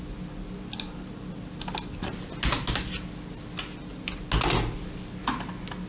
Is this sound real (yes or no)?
yes